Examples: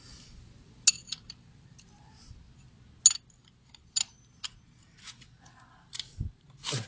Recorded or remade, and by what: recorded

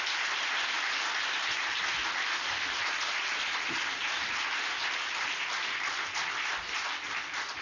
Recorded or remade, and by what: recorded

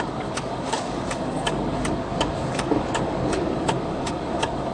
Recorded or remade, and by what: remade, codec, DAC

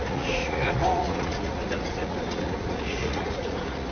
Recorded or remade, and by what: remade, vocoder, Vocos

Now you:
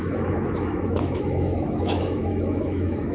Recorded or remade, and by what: remade, autoencoder, DAC-VAE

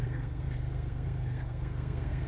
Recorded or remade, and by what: remade, codec, SNAC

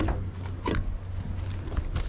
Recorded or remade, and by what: recorded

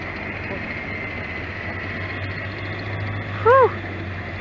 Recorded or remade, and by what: recorded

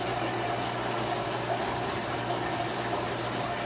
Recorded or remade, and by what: recorded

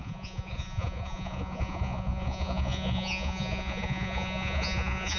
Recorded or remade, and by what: remade, vocoder, Vocos